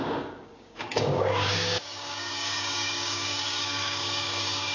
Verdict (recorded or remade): remade